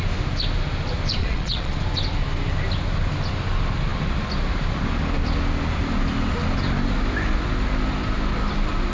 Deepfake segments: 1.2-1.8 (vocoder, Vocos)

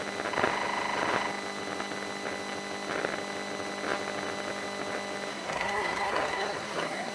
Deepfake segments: 5.3-7.1 (codec, SNAC)

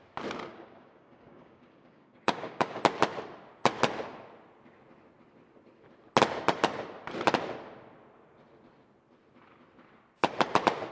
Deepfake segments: 0.5-2.8 (codec, DAC)

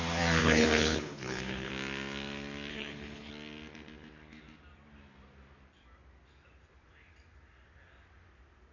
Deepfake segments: 0.4-1.7 (codec, HILCodec); 2.7-3.3